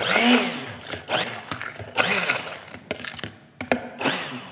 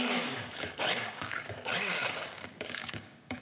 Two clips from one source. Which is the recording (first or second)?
first